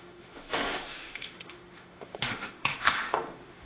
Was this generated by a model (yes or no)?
yes